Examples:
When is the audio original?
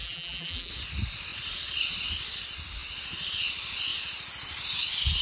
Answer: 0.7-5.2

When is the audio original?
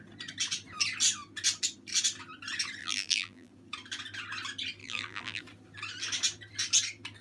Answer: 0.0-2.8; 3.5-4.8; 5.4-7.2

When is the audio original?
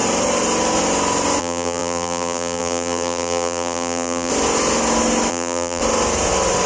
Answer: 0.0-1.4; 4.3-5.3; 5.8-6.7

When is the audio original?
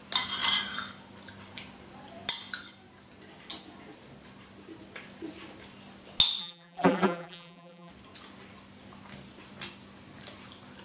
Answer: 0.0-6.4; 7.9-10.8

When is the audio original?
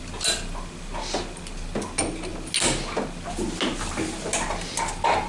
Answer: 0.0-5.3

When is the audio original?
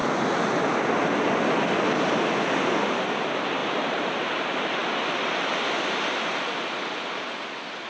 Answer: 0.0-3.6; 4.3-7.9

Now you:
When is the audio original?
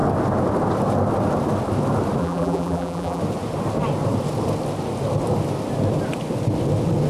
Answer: 0.0-2.2; 3.2-7.1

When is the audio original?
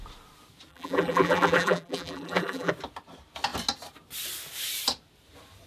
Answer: 0.0-0.7; 2.7-5.7